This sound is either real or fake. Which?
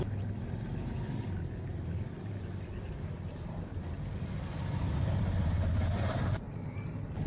real